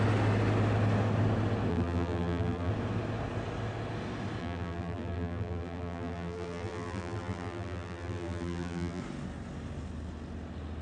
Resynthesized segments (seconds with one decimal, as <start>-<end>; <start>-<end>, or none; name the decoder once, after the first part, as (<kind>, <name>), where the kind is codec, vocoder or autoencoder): 1.7-2.7 (vocoder, BigVGAN v2); 4.4-9.0